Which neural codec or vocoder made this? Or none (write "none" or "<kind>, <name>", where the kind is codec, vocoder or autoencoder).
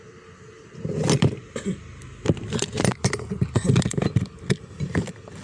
none